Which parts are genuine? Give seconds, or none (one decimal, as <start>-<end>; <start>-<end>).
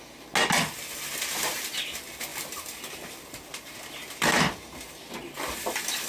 0.0-6.1